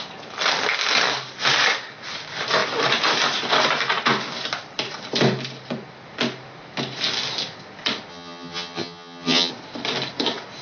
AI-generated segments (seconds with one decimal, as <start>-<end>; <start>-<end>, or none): 8.1-9.5